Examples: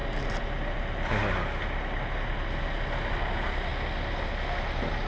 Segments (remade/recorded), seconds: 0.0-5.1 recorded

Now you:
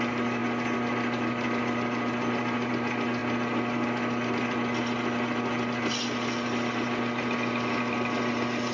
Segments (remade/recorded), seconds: 0.0-8.7 recorded

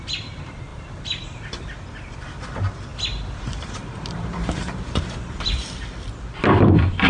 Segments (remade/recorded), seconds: 0.0-7.1 remade